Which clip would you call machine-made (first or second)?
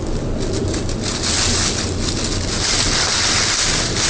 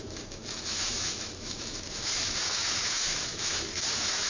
second